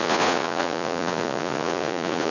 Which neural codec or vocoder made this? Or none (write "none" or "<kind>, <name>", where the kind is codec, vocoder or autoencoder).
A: vocoder, Vocos